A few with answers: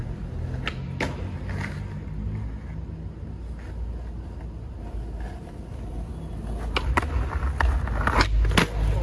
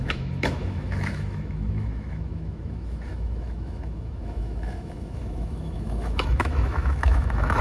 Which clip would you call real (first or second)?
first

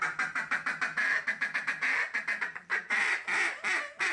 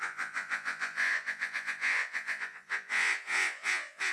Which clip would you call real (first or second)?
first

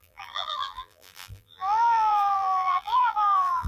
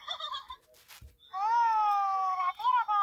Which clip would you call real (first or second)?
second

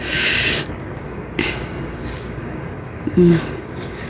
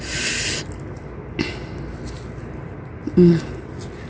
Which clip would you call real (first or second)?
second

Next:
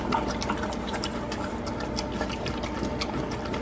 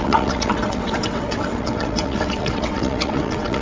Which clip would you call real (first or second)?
first